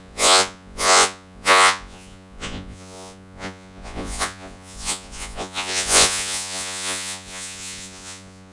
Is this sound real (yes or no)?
no